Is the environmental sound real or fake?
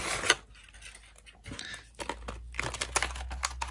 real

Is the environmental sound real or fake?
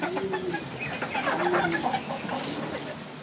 real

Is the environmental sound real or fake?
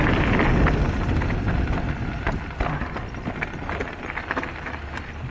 real